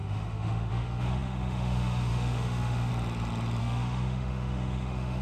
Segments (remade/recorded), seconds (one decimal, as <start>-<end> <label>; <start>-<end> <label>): 0.0-2.9 remade; 2.9-3.6 recorded; 3.6-5.2 remade